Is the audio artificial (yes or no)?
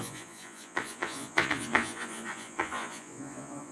yes